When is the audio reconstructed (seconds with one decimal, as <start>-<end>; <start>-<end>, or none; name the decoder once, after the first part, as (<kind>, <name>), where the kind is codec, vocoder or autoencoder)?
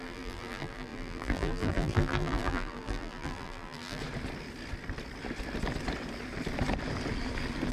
0.0-4.0 (vocoder, BigVGAN v2)